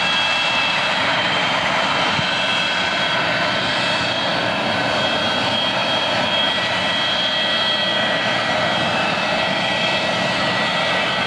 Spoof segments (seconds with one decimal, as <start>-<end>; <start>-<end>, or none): 0.0-11.3

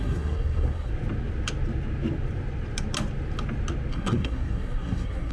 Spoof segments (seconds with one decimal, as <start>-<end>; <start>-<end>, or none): 0.0-0.9; 3.9-5.3

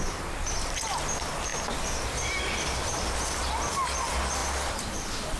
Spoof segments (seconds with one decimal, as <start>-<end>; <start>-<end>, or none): 4.4-5.4

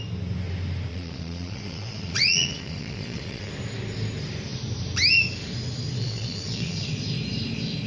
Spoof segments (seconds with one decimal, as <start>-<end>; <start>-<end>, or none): 0.9-3.5; 6.0-6.9

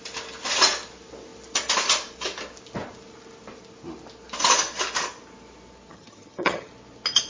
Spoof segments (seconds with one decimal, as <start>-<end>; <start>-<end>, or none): 5.9-6.7

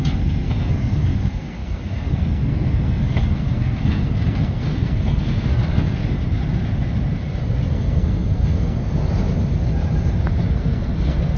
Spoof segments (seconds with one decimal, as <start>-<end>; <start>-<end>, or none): 0.0-6.0; 7.7-9.0; 10.5-11.4

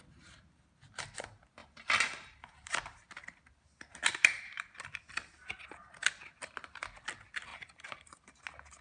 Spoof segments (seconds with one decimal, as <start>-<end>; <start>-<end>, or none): 1.6-2.8; 4.1-5.0; 7.5-8.4

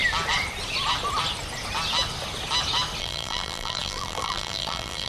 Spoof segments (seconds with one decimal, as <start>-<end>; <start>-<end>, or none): 3.0-5.1